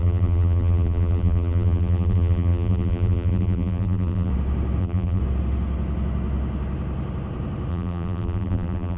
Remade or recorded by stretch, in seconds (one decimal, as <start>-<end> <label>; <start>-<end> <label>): 0.0-4.3 remade; 4.3-4.8 recorded; 4.8-5.2 remade; 5.2-7.7 recorded; 7.7-9.0 remade